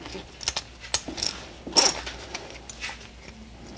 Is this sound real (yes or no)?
yes